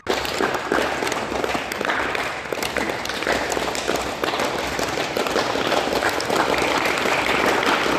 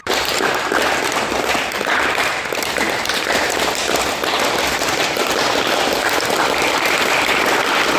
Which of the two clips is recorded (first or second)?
first